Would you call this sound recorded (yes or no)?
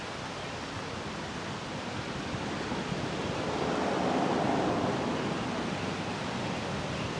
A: yes